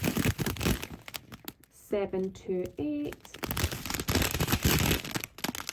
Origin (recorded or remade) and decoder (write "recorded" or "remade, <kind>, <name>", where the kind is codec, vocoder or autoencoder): recorded